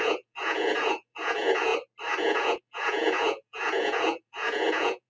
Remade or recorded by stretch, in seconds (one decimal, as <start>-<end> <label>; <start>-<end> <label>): 0.0-1.7 remade; 1.7-2.2 recorded; 2.2-5.1 remade